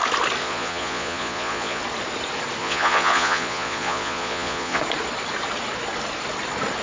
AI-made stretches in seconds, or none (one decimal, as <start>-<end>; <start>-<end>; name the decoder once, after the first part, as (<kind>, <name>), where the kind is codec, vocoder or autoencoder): 0.4-1.8 (vocoder, Vocos); 2.6-4.8